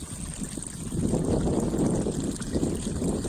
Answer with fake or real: real